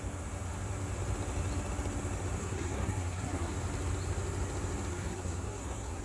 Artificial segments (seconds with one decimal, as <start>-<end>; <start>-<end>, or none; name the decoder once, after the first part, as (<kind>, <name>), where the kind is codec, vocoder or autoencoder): 2.4-3.5 (codec, SNAC); 4.9-6.0